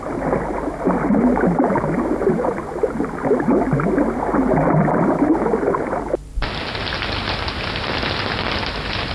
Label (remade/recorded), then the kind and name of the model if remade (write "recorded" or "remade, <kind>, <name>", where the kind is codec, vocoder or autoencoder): recorded